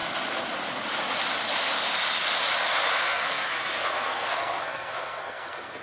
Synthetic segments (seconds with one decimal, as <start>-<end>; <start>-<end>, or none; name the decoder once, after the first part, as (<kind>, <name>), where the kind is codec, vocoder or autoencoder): 3.0-5.8 (codec, SNAC)